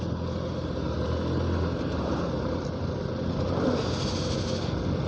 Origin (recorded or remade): recorded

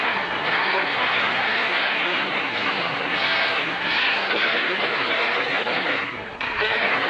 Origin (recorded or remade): remade